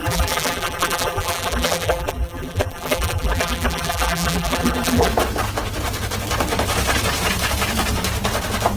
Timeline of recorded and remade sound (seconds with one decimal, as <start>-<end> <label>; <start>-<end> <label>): 0.0-5.1 remade; 5.1-8.8 recorded